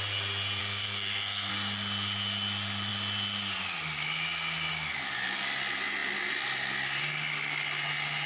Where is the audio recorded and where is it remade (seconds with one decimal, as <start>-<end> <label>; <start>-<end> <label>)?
0.0-0.6 recorded; 0.6-1.5 remade; 1.5-8.3 recorded